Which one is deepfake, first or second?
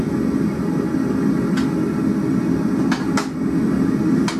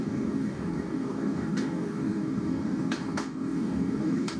second